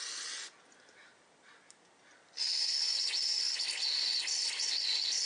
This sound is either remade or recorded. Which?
recorded